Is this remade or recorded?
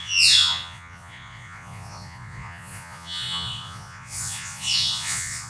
remade